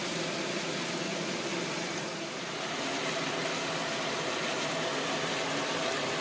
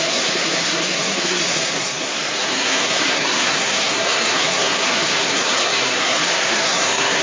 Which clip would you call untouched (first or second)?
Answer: first